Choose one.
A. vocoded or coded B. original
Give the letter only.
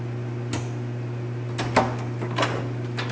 B